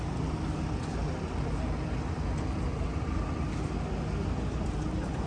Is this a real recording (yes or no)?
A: yes